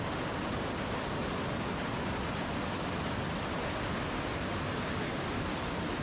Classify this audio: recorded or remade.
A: recorded